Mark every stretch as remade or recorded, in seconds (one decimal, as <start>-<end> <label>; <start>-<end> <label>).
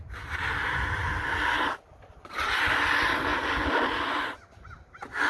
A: 0.0-5.3 recorded